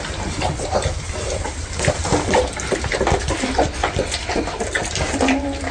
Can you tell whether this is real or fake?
real